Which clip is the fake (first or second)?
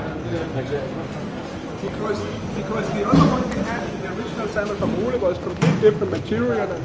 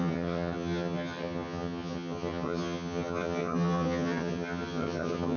second